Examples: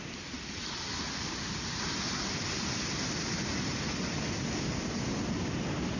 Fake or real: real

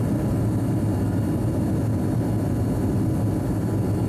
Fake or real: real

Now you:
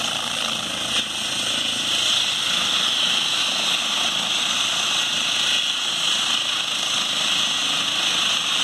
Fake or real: real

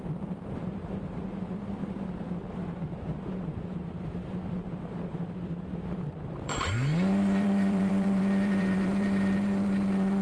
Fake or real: fake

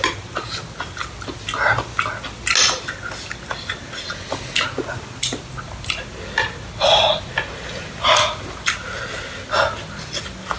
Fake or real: real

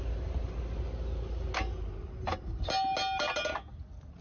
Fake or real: real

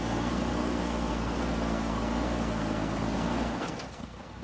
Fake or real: fake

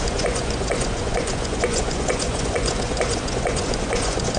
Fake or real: fake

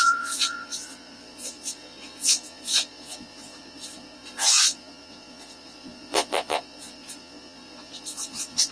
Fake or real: fake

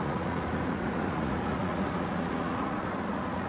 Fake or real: fake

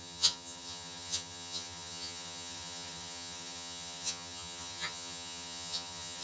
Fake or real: fake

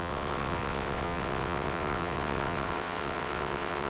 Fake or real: fake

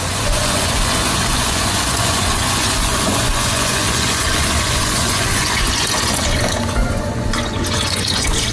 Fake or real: fake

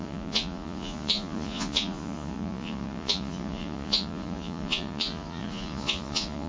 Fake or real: fake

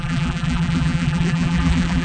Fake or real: fake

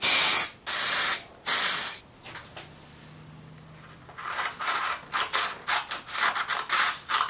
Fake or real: real